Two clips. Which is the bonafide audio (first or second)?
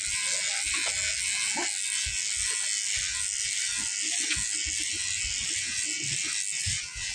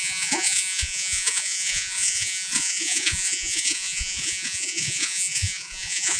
first